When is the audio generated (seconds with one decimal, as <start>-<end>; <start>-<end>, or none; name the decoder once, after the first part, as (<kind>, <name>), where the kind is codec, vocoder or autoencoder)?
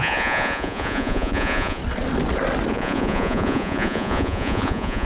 0.0-1.8 (vocoder, Vocos); 2.7-5.0